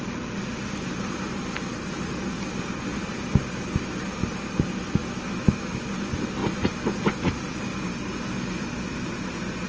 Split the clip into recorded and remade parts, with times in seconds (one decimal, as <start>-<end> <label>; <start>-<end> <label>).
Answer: 0.0-5.0 recorded; 5.0-5.9 remade; 5.9-9.7 recorded